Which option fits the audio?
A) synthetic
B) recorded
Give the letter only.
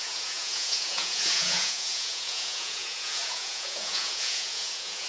A